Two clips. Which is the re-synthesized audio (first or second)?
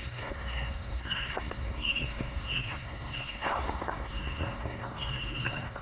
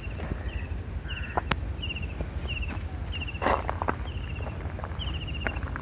first